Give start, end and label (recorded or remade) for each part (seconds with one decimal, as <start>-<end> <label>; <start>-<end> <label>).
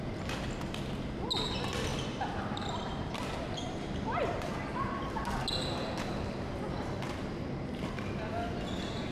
0.0-1.9 recorded; 1.9-5.0 remade; 5.0-9.1 recorded